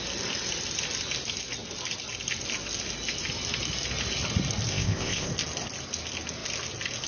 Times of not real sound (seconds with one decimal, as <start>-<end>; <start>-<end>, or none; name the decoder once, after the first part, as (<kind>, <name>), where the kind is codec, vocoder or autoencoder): 4.7-5.3 (codec, ZipCodec)

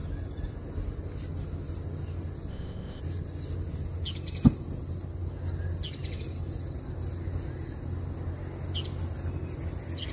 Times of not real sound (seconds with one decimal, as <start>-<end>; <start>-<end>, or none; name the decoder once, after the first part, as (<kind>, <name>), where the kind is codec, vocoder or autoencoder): 2.5-3.0 (codec, ZipCodec)

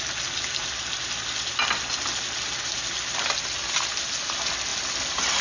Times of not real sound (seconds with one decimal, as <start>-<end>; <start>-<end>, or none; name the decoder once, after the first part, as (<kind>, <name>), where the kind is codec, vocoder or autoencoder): none

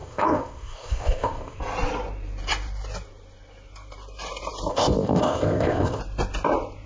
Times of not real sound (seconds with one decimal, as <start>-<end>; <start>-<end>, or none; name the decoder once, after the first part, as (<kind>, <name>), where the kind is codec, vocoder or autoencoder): 0.0-1.6 (codec, ZipCodec); 4.7-6.0

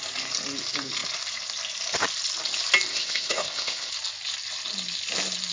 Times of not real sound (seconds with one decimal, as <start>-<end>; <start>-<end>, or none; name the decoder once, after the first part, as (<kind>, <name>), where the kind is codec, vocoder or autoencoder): 2.9-3.9 (codec, ZipCodec)